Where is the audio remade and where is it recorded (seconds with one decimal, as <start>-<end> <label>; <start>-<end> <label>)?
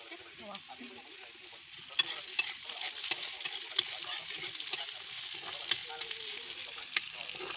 0.0-7.6 recorded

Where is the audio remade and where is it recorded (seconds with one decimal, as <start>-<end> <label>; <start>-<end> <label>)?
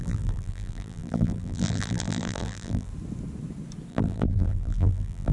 0.0-2.9 remade; 2.9-3.9 recorded; 3.9-5.3 remade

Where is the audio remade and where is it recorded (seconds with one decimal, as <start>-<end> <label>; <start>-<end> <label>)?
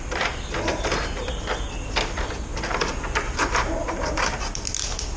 0.0-2.5 recorded; 2.5-4.6 remade; 4.6-5.2 recorded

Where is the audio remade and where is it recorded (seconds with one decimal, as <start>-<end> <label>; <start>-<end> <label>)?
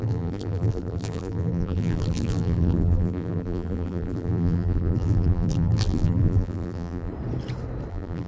0.0-7.1 remade; 7.1-7.9 recorded; 7.9-8.3 remade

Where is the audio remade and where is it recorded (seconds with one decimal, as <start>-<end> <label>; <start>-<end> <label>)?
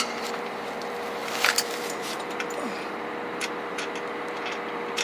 0.0-5.0 remade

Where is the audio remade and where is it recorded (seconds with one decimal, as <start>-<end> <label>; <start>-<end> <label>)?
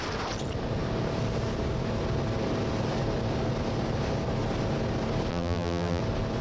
0.0-5.3 recorded; 5.3-6.0 remade; 6.0-6.4 recorded